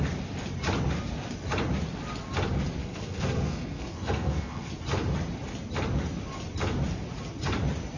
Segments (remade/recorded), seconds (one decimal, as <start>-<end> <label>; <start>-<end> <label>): 0.0-2.8 recorded; 2.8-4.7 remade; 4.7-8.0 recorded